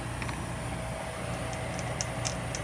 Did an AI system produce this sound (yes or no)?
no